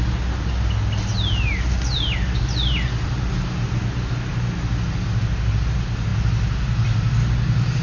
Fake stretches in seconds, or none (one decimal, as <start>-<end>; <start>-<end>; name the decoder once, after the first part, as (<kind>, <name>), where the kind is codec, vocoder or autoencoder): none